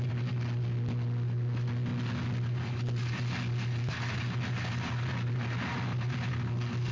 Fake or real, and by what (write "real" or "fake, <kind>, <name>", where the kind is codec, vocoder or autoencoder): real